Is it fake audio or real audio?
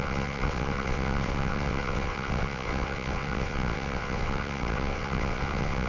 fake